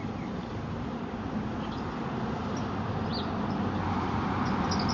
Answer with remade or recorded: recorded